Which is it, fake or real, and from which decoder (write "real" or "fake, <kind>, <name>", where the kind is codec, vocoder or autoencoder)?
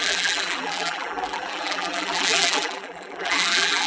fake, vocoder, BigVGAN v2